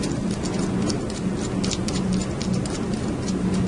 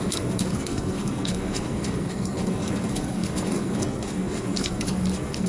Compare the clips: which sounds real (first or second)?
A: first